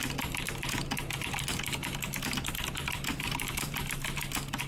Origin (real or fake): fake